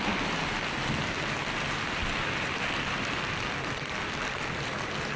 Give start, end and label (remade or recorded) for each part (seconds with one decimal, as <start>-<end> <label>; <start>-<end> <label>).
0.0-5.2 recorded